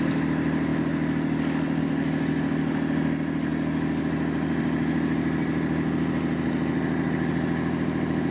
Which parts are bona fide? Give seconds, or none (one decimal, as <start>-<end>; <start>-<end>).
0.0-8.3